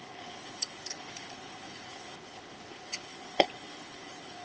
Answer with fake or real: fake